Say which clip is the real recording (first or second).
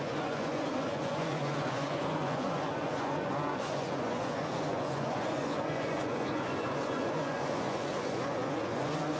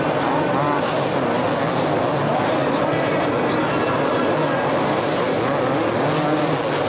second